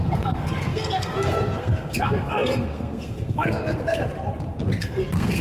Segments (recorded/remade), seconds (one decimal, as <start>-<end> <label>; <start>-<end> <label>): 0.0-4.1 remade; 4.1-4.8 recorded; 4.8-5.4 remade